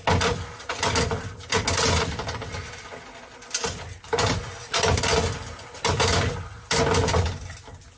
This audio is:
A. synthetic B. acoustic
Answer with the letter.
B